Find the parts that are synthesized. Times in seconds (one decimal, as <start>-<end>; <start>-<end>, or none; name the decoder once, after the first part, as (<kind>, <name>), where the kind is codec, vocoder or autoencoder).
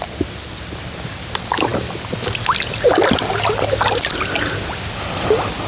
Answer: none